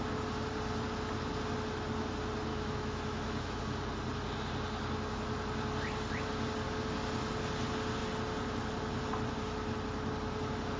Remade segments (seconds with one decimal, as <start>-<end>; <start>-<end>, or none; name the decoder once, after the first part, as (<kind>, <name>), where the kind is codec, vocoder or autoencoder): 2.5-3.6 (autoencoder, DAC-VAE)